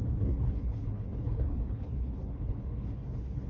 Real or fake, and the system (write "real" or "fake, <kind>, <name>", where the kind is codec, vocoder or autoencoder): fake, codec, HILCodec